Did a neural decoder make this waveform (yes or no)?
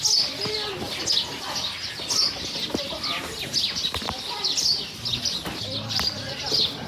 no